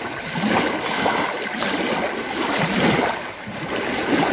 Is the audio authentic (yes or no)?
yes